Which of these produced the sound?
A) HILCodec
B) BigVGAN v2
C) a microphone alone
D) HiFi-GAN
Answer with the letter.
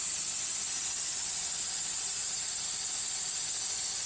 C